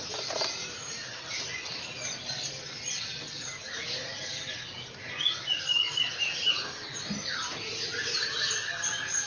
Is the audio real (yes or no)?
yes